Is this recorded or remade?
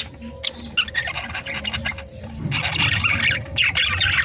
recorded